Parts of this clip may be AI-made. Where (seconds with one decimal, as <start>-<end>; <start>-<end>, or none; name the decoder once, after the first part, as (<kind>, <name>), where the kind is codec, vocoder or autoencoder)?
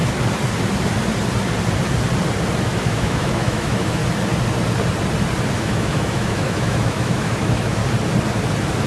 2.6-4.0 (autoencoder, DAC-VAE); 5.5-7.8